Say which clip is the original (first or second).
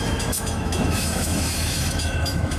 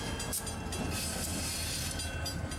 second